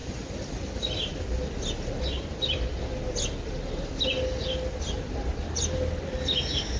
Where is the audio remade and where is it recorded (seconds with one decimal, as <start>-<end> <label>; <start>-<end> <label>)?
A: 0.0-0.5 remade; 0.5-6.8 recorded

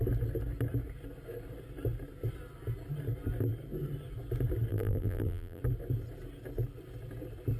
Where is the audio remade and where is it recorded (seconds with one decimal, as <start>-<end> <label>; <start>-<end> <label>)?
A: 0.0-4.7 recorded; 4.7-5.6 remade; 5.6-7.6 recorded